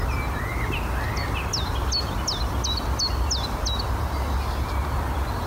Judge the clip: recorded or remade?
recorded